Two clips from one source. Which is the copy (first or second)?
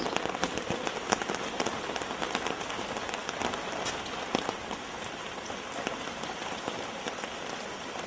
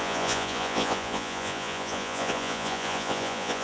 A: second